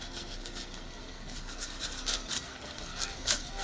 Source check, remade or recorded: remade